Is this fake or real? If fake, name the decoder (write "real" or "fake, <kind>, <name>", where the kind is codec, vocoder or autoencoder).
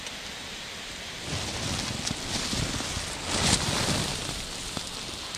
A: fake, vocoder, BigVGAN v2